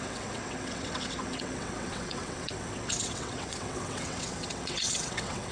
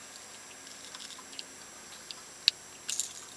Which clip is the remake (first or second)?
first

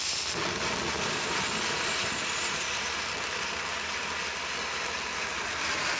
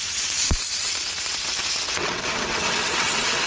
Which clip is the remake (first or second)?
second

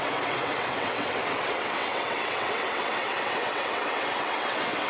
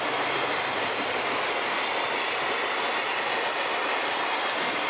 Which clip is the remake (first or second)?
first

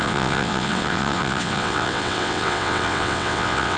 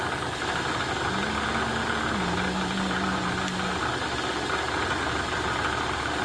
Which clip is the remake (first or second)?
first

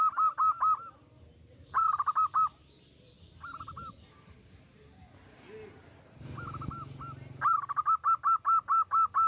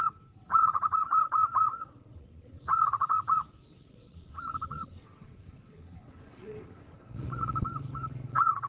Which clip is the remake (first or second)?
second